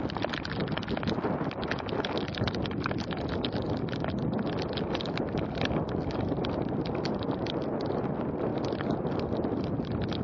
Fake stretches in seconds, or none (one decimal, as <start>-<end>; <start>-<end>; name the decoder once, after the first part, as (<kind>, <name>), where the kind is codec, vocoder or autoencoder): none